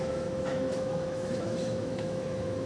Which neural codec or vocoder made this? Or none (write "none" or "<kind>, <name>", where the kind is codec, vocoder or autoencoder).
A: autoencoder, DAC-VAE